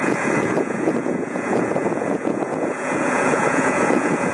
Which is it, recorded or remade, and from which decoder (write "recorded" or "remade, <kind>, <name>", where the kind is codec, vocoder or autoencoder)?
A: remade, vocoder, Vocos